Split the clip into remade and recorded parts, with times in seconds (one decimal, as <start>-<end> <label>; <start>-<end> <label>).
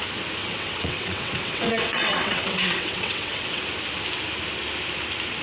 0.0-0.4 recorded; 0.4-3.6 remade; 3.6-5.4 recorded